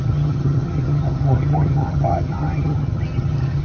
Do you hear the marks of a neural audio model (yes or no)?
yes